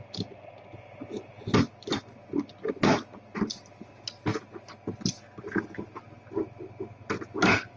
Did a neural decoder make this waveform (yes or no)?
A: no